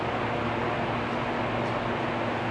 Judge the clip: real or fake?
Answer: real